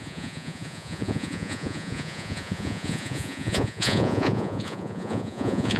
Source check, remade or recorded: remade